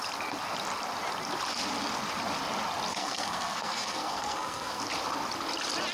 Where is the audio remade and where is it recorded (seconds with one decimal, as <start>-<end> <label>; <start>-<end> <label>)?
0.0-2.9 recorded; 2.9-4.8 remade; 4.8-5.9 recorded